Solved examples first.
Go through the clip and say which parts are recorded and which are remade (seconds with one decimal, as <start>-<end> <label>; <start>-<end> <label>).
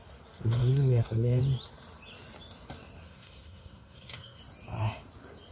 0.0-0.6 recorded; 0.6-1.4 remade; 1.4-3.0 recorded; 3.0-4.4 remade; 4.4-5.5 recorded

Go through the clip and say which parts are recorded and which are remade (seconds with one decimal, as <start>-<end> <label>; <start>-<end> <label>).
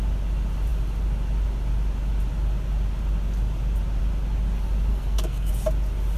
0.0-4.9 recorded; 4.9-5.5 remade; 5.5-6.2 recorded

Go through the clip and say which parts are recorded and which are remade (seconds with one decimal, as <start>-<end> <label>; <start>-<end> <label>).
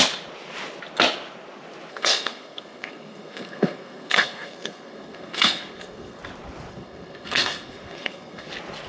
0.0-1.9 recorded; 1.9-6.2 remade; 6.2-6.7 recorded; 6.7-8.5 remade; 8.5-8.9 recorded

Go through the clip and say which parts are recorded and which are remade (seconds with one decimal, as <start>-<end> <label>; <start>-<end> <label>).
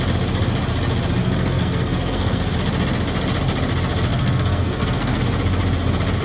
0.0-1.2 recorded; 1.2-2.5 remade; 2.5-4.1 recorded; 4.1-5.2 remade; 5.2-6.2 recorded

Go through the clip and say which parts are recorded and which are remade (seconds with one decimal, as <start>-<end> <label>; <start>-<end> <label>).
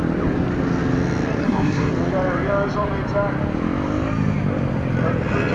0.0-1.4 recorded; 1.4-1.9 remade; 1.9-5.5 recorded